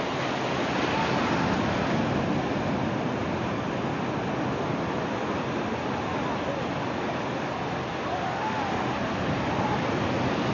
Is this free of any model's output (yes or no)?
yes